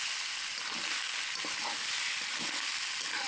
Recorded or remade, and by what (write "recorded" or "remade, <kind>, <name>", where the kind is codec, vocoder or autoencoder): recorded